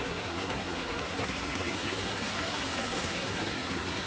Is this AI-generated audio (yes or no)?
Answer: yes